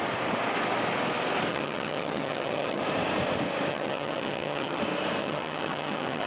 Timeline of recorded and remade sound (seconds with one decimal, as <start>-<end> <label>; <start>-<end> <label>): 0.0-1.5 recorded; 1.5-2.8 remade; 2.8-3.7 recorded; 3.7-4.8 remade; 4.8-5.2 recorded; 5.2-6.3 remade